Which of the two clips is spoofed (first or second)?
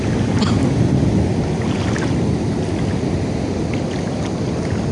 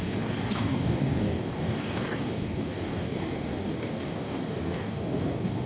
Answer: second